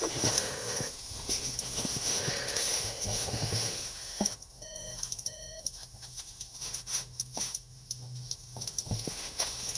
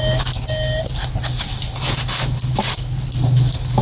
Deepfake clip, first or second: first